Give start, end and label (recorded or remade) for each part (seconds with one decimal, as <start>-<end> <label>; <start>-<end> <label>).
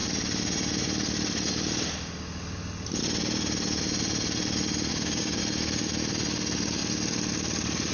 0.0-4.9 recorded; 4.9-5.4 remade; 5.4-7.9 recorded